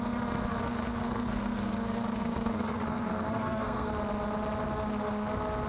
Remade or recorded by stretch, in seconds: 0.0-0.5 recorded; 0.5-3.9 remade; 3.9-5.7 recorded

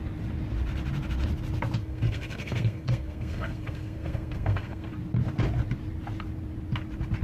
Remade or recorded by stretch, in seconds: 0.0-1.8 recorded; 1.8-4.9 remade; 4.9-7.2 recorded